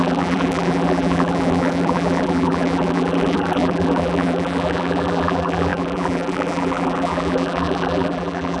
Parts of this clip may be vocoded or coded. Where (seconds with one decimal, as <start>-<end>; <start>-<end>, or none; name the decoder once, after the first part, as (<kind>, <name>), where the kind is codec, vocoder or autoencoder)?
0.0-8.6 (vocoder, BigVGAN v2)